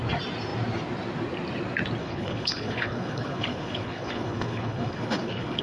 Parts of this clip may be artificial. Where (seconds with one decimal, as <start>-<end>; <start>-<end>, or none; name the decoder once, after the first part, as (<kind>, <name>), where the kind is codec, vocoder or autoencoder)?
2.0-5.6 (codec, HILCodec)